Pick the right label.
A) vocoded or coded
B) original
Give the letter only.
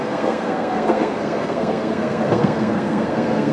A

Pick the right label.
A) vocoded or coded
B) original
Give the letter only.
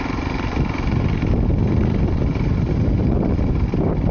B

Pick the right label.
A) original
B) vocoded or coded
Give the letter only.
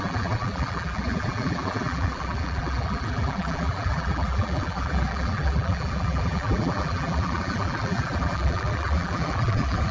B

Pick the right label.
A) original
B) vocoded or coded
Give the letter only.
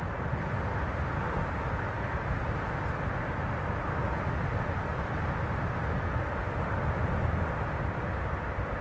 A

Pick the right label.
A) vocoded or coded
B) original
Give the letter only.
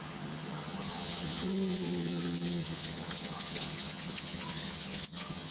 A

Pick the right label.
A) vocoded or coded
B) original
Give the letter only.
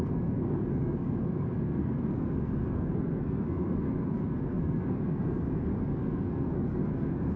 A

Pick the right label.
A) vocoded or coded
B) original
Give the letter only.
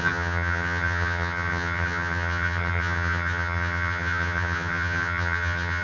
A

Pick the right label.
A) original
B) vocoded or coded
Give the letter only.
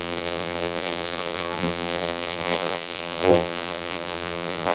B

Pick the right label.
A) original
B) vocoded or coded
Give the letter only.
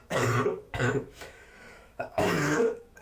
B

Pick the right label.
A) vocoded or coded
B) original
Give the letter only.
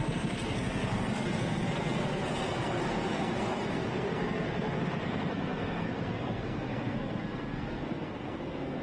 A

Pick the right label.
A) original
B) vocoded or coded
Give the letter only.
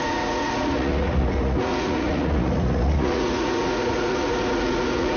B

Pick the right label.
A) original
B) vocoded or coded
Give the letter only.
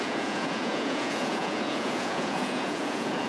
B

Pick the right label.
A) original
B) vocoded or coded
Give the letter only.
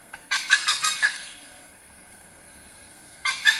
B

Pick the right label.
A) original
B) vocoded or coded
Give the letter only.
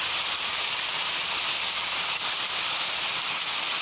A